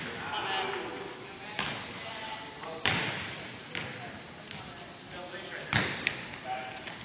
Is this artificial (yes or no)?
no